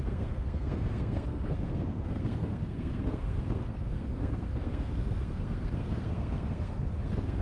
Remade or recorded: remade